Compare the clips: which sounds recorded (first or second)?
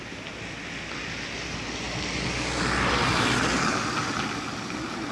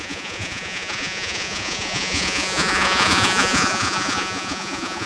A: first